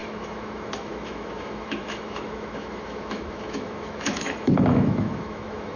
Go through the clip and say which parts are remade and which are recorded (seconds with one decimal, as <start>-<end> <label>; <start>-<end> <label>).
0.0-5.8 remade

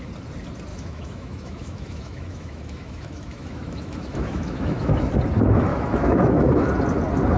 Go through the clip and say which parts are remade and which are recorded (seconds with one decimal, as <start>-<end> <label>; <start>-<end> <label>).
0.0-0.7 recorded; 0.7-5.1 remade; 5.1-5.7 recorded; 5.7-6.7 remade; 6.7-7.4 recorded

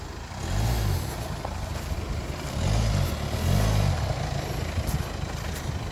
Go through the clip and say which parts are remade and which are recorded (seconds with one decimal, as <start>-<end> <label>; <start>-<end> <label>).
0.0-5.9 recorded

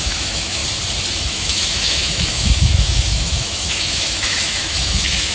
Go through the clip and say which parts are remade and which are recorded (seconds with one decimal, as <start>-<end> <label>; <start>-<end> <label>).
0.0-0.6 remade; 0.6-1.3 recorded; 1.3-5.3 remade